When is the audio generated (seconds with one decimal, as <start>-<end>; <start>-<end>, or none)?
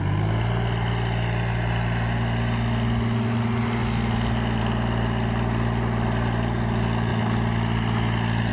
none